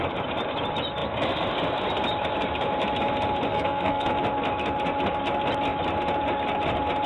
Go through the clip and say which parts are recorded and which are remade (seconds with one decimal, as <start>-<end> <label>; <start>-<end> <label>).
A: 0.0-3.5 recorded; 3.5-4.1 remade; 4.1-7.1 recorded